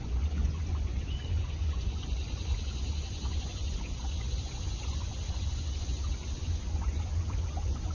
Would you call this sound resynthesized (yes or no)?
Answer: yes